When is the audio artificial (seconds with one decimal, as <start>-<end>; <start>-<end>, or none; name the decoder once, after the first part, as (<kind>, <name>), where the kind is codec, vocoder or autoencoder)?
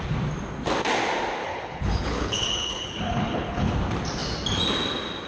1.4-3.7 (codec, HILCodec)